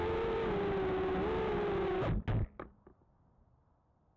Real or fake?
real